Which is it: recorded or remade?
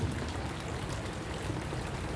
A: recorded